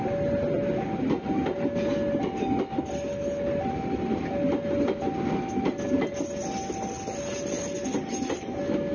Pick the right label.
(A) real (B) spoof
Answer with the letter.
A